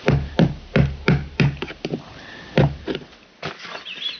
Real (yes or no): yes